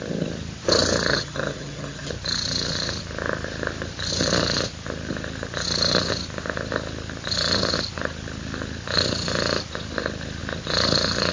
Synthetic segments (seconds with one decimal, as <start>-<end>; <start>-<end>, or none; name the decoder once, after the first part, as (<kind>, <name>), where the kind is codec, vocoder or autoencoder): 1.1-2.1 (vocoder, HiFi-GAN)